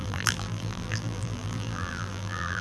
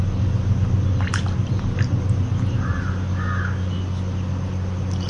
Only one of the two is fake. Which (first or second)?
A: first